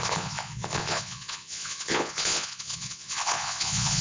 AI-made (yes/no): yes